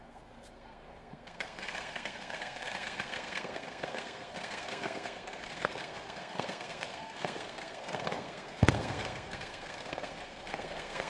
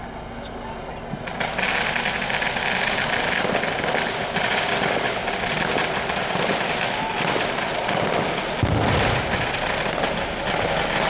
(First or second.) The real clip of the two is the second